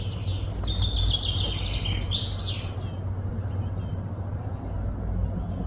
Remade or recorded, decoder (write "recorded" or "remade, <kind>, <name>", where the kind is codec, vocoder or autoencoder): recorded